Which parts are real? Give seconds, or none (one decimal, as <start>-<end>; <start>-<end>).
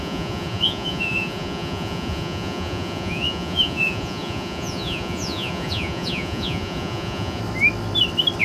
7.4-8.4